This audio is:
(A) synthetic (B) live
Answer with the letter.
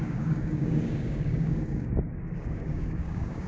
A